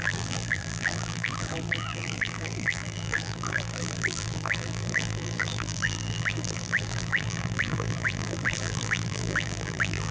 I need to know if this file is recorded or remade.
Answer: remade